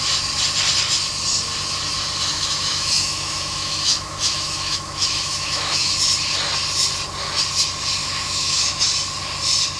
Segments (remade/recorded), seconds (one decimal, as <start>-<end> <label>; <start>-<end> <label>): 0.0-2.3 recorded; 2.3-5.9 remade; 5.9-8.0 recorded; 8.0-8.9 remade; 8.9-9.8 recorded